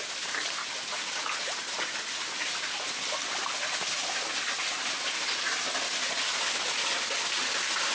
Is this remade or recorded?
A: recorded